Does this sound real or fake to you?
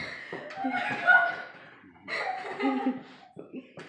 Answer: real